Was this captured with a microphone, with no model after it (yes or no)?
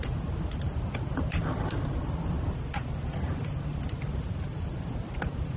yes